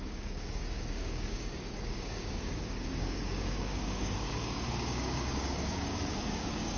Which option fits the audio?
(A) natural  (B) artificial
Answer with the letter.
B